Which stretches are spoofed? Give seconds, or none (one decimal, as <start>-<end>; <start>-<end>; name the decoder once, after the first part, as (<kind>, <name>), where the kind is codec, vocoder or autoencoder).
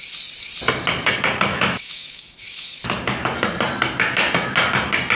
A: 1.5-2.8 (autoencoder, DAC-VAE)